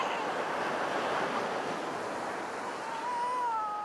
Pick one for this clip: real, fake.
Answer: real